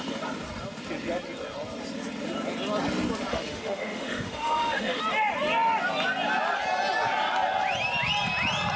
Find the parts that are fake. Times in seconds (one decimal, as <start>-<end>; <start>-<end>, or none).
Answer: 3.3-5.0